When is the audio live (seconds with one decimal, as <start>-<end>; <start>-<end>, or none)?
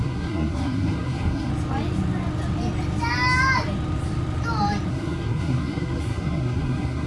1.5-4.9